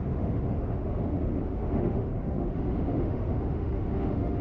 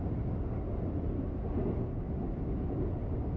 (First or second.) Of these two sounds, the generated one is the first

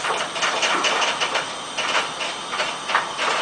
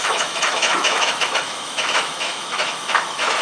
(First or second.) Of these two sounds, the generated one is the second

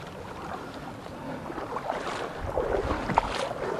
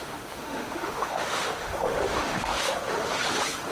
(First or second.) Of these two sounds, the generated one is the second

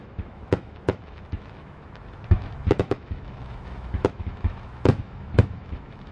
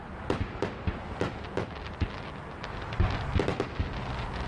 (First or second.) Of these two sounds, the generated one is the first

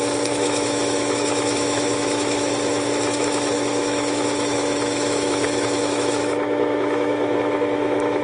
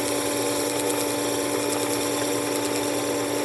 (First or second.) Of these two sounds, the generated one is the first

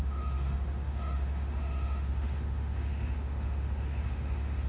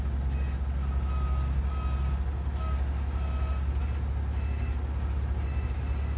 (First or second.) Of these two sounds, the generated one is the first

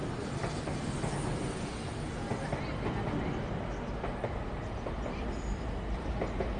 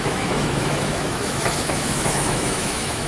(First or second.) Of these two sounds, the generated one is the second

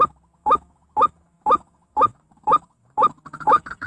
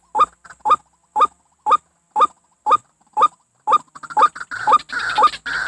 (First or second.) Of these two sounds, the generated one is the first